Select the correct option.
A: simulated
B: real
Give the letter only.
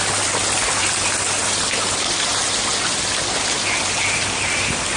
B